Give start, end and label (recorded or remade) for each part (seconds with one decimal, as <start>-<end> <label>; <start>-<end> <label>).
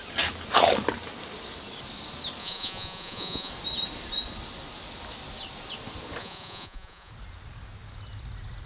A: 0.0-2.4 recorded; 2.4-3.5 remade; 3.5-6.2 recorded; 6.2-7.1 remade; 7.1-8.7 recorded